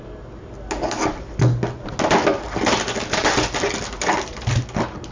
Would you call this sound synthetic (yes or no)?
no